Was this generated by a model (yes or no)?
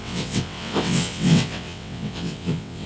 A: yes